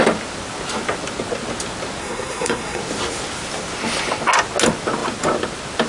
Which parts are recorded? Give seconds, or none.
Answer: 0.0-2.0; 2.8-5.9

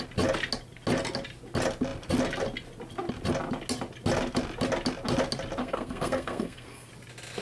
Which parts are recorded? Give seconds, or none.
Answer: 0.0-5.6; 6.9-7.4

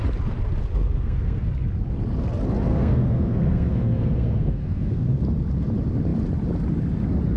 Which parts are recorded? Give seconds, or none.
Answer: 0.0-0.7; 1.5-2.7; 5.2-7.4